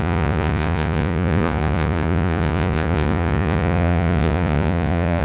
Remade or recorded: remade